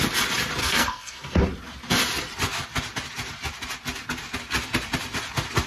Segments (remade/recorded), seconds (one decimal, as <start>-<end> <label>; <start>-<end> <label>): 0.0-0.6 recorded; 0.6-1.4 remade; 1.4-5.7 recorded